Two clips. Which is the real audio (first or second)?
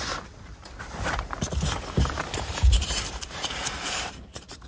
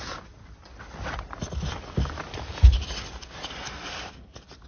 second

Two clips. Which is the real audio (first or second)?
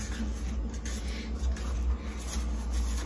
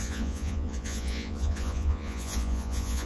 first